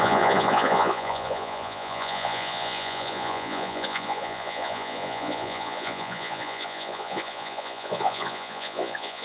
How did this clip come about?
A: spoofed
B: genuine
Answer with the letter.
A